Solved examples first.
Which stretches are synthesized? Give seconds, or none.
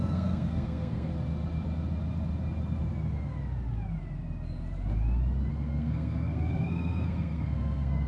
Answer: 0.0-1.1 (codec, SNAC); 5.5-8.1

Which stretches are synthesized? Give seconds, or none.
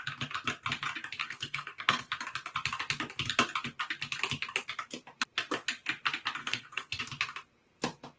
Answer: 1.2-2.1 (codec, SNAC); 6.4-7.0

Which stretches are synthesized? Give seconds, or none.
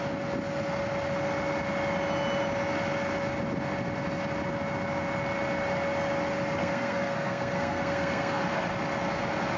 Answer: 6.6-8.4 (codec, SNAC)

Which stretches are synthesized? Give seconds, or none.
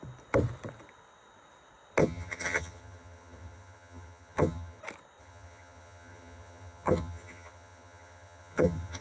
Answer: 2.0-4.8 (vocoder, HiFi-GAN); 5.2-9.0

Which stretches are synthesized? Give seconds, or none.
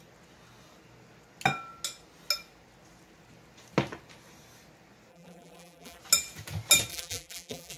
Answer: 5.1-6.0 (vocoder, BigVGAN v2); 6.9-7.8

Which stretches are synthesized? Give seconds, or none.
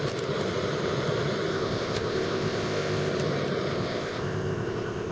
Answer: 1.5-3.1 (codec, ZipCodec); 3.7-5.1